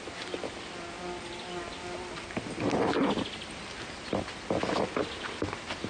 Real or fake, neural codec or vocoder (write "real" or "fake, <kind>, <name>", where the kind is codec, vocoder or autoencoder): real